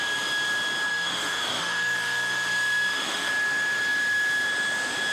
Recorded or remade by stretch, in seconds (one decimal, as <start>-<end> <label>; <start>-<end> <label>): 0.0-0.9 recorded; 0.9-3.3 remade; 3.3-5.1 recorded